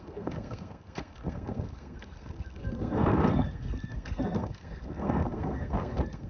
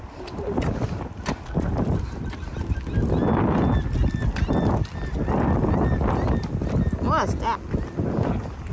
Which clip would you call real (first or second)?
second